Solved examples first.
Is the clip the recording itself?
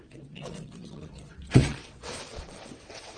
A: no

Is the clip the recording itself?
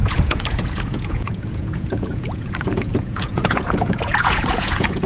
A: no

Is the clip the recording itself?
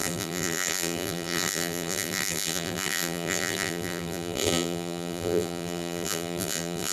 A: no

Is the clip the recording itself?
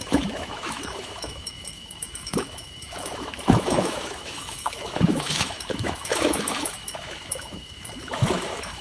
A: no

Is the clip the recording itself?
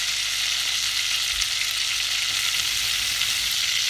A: yes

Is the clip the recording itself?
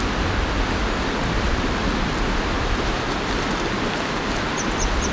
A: yes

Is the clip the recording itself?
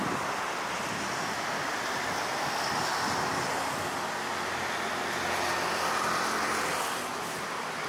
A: yes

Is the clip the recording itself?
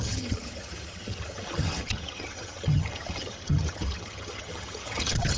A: no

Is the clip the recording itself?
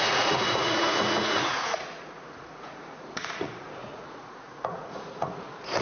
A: no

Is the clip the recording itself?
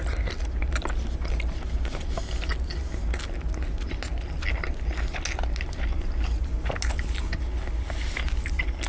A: yes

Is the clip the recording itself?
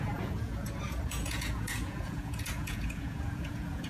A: no